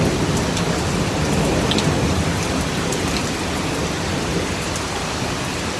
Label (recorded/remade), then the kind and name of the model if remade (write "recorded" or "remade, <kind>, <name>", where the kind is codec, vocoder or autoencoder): recorded